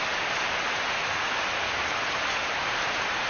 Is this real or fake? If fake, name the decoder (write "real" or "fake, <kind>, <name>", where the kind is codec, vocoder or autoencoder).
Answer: real